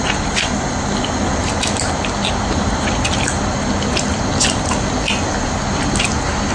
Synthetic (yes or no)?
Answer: no